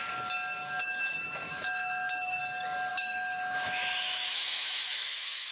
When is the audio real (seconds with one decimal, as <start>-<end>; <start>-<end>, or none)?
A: 0.0-0.8; 2.4-2.9